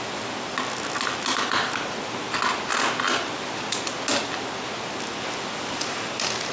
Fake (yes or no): no